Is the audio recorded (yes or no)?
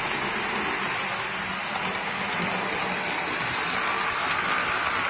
yes